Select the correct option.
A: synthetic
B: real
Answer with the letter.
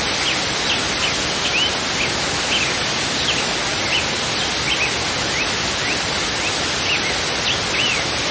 B